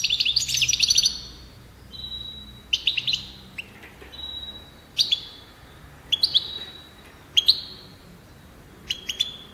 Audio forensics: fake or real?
fake